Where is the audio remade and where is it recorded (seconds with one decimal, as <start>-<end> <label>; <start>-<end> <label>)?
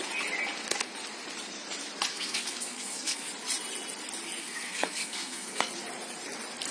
0.0-2.1 recorded; 2.1-3.3 remade; 3.3-4.4 recorded; 4.4-5.7 remade; 5.7-6.7 recorded